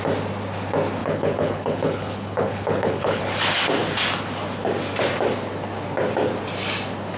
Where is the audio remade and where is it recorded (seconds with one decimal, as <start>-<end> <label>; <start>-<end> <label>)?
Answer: 0.0-1.0 recorded; 1.0-3.2 remade; 3.2-7.2 recorded